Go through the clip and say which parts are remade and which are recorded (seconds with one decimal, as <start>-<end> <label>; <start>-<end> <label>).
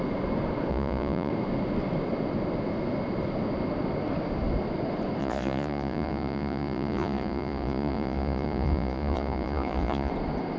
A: 0.0-0.7 recorded; 0.7-1.3 remade; 1.3-5.2 recorded; 5.2-10.1 remade; 10.1-10.6 recorded